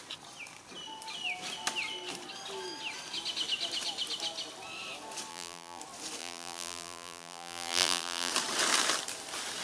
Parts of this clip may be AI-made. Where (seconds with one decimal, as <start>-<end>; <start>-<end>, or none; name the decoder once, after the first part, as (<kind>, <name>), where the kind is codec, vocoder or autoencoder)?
5.3-5.8 (vocoder, BigVGAN v2); 6.2-8.3